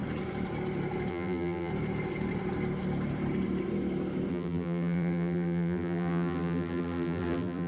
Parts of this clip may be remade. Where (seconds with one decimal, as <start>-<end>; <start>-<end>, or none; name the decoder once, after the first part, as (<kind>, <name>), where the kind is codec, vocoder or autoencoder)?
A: 1.1-1.7 (vocoder, BigVGAN v2); 4.3-7.7